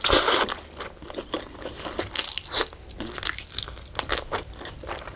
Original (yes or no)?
yes